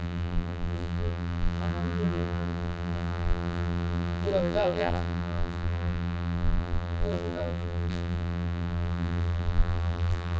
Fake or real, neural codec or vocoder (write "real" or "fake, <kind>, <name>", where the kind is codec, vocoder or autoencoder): fake, vocoder, BigVGAN v2